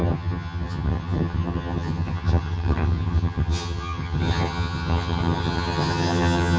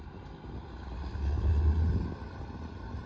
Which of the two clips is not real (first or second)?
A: first